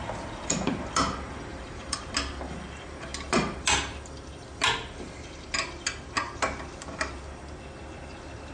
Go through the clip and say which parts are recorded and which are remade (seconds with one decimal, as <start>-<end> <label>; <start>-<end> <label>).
0.0-1.5 recorded; 1.5-2.0 remade; 2.0-8.5 recorded